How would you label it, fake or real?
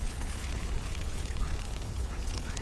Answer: fake